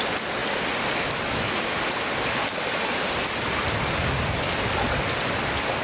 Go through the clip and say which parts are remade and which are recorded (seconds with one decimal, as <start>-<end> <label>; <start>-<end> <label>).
0.0-5.8 recorded